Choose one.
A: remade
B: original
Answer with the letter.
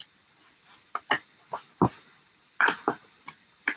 B